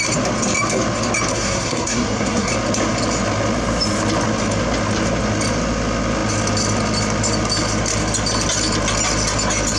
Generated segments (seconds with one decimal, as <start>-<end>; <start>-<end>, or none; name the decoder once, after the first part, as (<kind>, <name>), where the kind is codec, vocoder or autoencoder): 1.3-2.5 (codec, SNAC)